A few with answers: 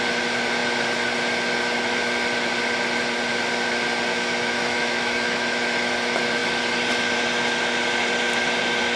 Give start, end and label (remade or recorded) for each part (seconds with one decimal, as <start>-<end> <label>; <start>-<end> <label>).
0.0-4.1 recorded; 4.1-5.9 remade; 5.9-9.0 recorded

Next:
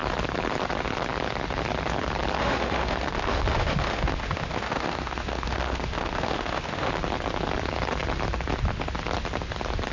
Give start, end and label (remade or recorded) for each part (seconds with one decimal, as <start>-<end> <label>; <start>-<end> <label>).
0.0-2.4 recorded; 2.4-6.9 remade; 6.9-9.9 recorded

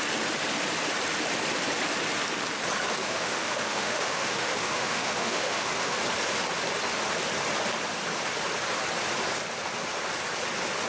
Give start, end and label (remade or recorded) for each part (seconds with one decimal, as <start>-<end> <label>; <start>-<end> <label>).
0.0-3.0 recorded; 3.0-6.0 remade; 6.0-10.9 recorded

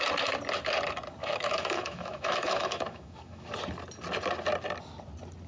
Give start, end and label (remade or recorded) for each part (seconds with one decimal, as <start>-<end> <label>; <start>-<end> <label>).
0.0-1.2 recorded; 1.2-3.5 remade; 3.5-5.5 recorded

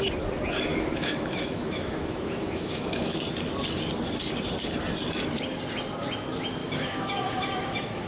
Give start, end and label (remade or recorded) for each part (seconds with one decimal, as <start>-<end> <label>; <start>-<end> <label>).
0.0-0.7 recorded; 0.7-3.2 remade; 3.2-6.6 recorded; 6.6-8.1 remade

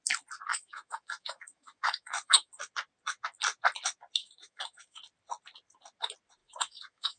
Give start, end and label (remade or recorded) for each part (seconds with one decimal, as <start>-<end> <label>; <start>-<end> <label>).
0.0-0.5 recorded; 0.5-2.5 remade; 2.5-4.2 recorded; 4.2-5.0 remade; 5.0-6.4 recorded; 6.4-7.2 remade

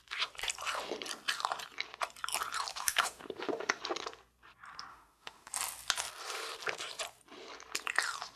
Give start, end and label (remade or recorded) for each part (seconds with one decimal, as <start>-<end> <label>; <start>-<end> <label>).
0.0-2.7 recorded; 2.7-3.8 remade; 3.8-4.9 recorded; 4.9-5.5 remade; 5.5-8.4 recorded